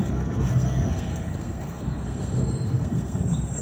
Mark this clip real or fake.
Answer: fake